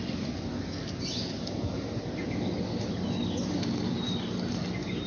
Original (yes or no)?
yes